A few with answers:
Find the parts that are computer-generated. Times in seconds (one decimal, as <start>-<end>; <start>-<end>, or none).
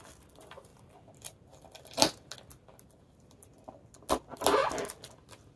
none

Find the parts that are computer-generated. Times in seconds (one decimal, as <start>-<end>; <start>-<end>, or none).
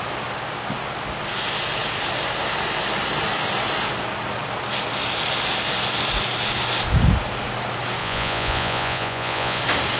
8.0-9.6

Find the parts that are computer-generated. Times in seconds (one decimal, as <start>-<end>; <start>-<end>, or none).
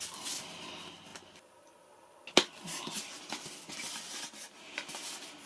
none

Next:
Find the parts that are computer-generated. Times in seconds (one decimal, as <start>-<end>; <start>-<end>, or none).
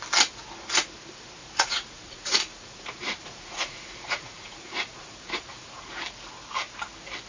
1.4-5.8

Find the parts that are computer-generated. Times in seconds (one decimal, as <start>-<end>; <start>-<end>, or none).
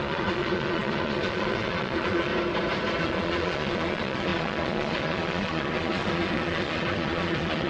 0.0-2.3; 3.0-7.7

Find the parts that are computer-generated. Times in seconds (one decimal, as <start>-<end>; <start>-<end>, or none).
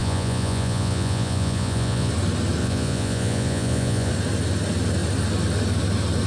0.0-2.1; 2.6-4.1